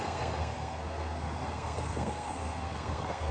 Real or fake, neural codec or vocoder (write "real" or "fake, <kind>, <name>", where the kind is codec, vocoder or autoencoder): fake, codec, SNAC